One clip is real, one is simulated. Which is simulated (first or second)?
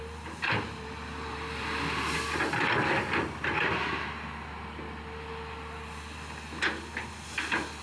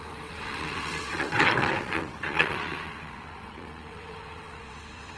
second